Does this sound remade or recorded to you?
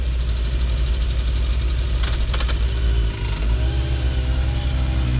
recorded